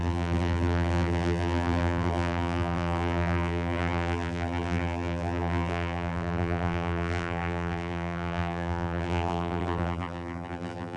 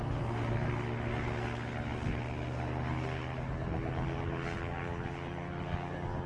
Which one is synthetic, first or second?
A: first